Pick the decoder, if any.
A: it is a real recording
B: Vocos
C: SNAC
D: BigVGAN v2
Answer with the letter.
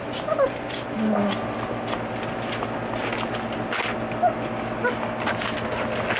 A